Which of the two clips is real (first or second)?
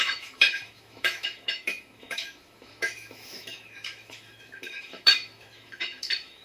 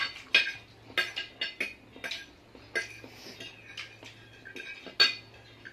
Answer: second